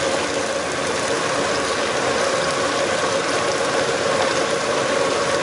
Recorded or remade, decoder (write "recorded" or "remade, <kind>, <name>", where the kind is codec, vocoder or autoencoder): recorded